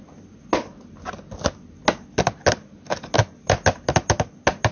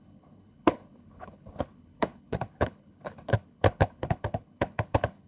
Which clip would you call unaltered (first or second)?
first